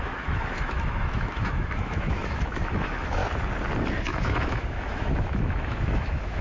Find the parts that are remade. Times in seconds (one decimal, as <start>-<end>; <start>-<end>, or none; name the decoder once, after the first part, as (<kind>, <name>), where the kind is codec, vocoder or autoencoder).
0.0-3.2 (autoencoder, DAC-VAE); 4.0-6.4